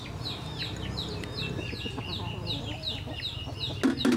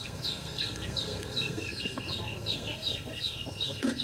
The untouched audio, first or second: first